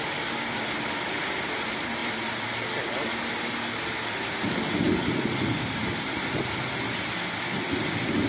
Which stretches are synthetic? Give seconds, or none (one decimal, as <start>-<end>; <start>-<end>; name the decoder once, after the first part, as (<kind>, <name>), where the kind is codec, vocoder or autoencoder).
none